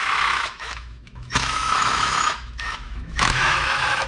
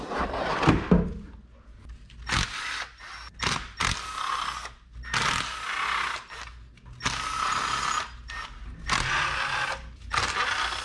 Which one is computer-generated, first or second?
first